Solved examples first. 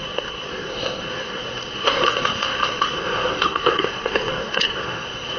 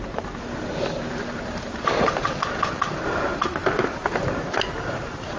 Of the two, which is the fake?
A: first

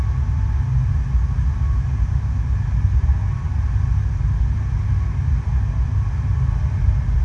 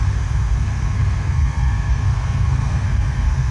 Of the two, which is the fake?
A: second